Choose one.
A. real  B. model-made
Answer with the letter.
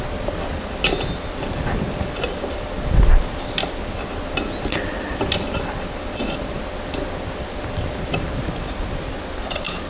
A